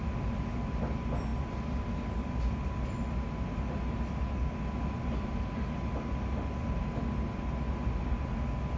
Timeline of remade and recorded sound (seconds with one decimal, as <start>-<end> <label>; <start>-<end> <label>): 0.0-8.8 recorded